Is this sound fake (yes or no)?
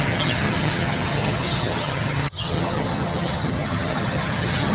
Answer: yes